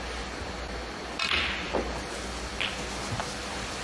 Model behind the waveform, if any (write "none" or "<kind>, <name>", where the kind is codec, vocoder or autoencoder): none